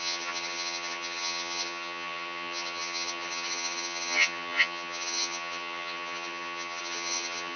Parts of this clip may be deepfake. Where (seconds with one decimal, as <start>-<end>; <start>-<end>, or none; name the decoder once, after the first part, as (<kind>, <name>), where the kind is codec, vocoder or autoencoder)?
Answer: 0.0-7.6 (vocoder, HiFi-GAN)